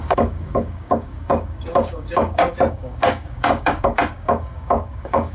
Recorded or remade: remade